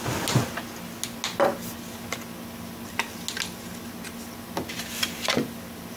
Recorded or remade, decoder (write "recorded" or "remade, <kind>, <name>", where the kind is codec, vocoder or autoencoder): recorded